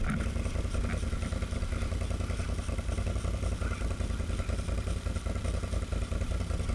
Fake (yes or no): no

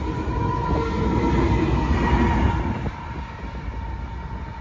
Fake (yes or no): no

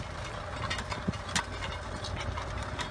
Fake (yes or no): no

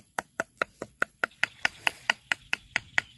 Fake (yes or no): yes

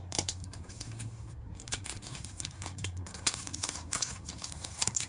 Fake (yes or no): yes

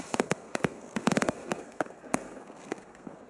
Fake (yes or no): yes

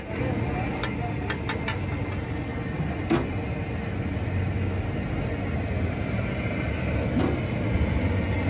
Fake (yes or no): no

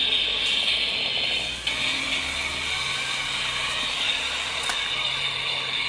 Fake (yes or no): no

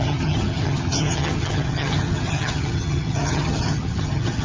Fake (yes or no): yes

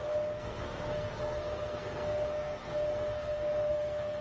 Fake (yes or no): yes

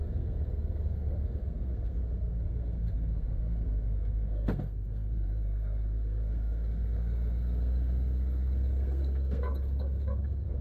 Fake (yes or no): yes